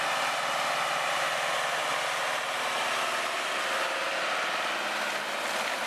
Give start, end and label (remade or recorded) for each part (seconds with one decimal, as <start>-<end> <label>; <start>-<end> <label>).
0.0-5.9 recorded